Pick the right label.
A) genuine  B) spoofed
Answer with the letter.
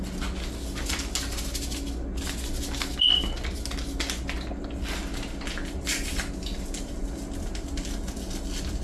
A